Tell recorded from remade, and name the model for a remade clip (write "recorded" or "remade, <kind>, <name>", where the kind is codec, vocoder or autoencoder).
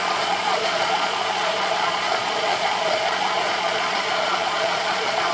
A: remade, vocoder, Vocos